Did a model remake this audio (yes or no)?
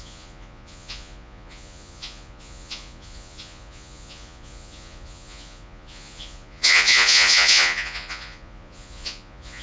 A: yes